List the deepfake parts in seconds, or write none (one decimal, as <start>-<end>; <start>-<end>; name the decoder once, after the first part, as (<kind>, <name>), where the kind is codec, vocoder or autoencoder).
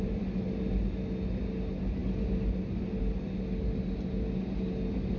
none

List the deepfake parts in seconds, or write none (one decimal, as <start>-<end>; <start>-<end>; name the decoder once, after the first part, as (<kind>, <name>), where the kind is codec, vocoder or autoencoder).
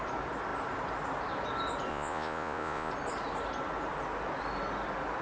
1.9-2.9 (vocoder, Vocos)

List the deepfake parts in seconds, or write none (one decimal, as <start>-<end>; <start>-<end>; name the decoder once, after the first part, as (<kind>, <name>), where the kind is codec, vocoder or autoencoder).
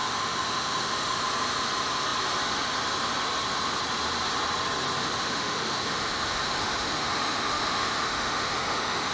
0.0-1.2 (autoencoder, DAC-VAE); 5.0-9.1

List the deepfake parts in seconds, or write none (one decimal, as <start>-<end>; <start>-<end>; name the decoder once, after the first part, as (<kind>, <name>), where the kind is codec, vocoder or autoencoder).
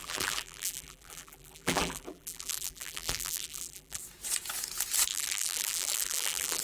0.0-4.0 (vocoder, BigVGAN v2); 5.1-6.6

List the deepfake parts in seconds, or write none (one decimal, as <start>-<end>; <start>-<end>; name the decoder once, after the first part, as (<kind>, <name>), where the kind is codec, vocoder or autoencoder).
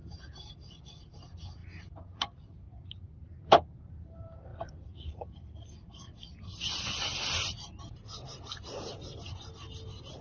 0.0-0.5 (vocoder, BigVGAN v2)